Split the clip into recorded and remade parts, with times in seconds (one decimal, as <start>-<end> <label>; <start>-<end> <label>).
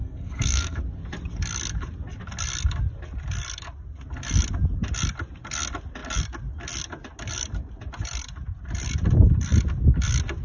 0.0-0.8 remade; 0.8-10.4 recorded